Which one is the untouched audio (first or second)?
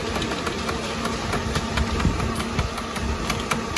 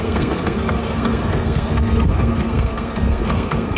first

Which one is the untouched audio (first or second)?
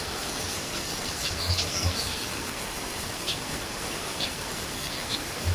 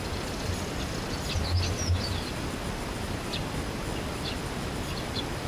second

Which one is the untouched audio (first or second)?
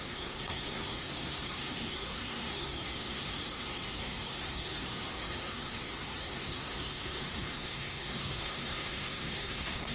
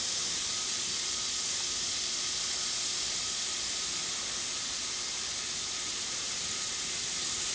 second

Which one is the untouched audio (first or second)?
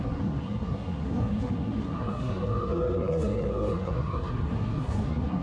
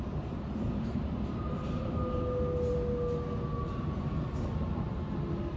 second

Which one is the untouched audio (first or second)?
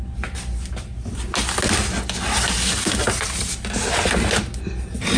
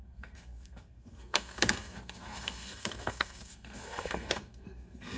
first